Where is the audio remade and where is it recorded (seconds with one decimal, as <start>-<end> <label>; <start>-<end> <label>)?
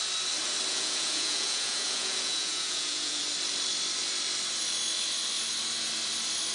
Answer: 0.0-0.7 recorded; 0.7-3.2 remade; 3.2-6.5 recorded